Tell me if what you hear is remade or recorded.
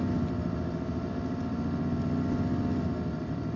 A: recorded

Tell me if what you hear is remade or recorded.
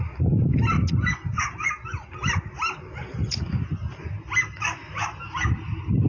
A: recorded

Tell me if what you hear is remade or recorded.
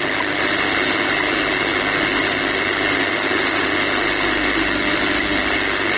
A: recorded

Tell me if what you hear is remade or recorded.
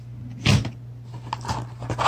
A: recorded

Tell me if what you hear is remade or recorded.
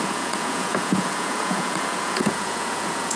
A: remade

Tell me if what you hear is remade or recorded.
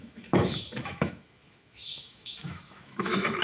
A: remade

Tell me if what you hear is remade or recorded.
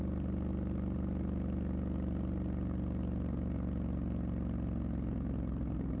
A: recorded